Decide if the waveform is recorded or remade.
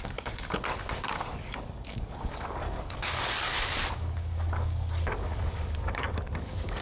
remade